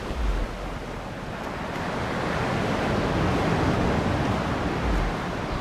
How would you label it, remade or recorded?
recorded